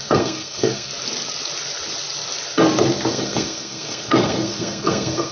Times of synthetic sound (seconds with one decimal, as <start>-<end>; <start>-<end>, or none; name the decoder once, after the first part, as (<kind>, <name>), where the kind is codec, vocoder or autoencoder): 0.0-0.9 (codec, SNAC); 3.1-5.3